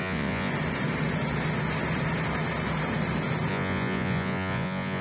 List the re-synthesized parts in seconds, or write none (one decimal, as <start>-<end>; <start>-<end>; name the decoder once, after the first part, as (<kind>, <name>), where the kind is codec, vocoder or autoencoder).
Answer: 0.0-0.5 (vocoder, Vocos); 3.5-5.0